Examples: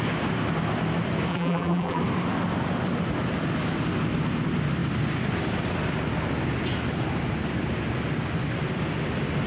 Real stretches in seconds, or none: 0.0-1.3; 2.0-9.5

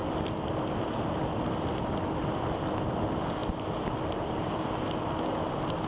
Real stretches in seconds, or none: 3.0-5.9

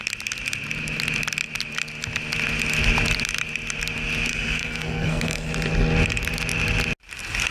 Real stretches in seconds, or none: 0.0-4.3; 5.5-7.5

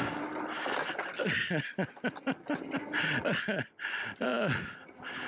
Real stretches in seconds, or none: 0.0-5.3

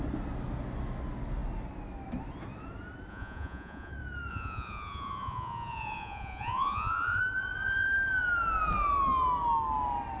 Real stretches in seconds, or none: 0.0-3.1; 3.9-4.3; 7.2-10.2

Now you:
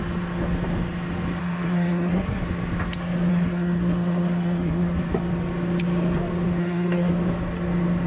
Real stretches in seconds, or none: 0.0-1.4; 2.4-3.3; 5.0-6.6; 7.1-8.1

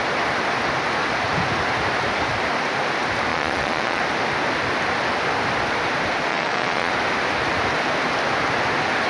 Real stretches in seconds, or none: 0.0-3.3; 4.0-6.3; 6.9-9.1